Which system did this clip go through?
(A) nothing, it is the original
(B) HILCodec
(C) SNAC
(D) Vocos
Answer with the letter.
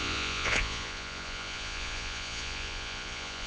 D